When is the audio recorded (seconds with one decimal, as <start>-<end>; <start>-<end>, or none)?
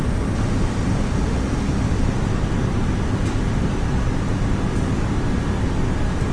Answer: 0.0-6.3